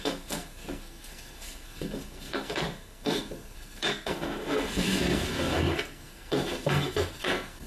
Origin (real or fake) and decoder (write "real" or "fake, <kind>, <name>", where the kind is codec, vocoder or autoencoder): fake, codec, SNAC